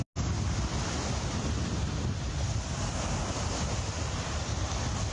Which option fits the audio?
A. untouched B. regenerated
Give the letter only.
A